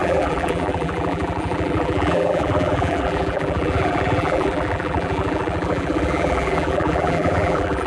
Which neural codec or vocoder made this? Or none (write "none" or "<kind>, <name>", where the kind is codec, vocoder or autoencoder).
vocoder, BigVGAN v2